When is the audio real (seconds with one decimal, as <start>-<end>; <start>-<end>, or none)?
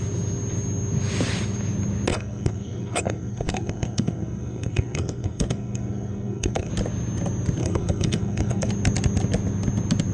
0.0-2.1; 6.7-7.6; 8.7-10.1